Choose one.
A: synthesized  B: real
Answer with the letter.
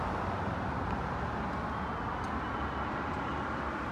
B